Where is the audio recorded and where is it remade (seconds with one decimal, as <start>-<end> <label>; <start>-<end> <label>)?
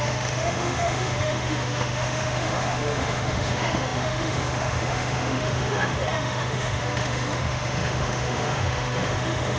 0.0-9.6 remade